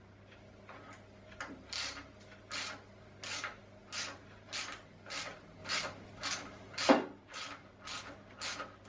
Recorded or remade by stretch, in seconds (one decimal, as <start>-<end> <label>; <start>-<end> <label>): 0.0-8.9 recorded